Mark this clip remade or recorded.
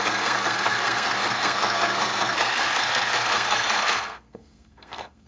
remade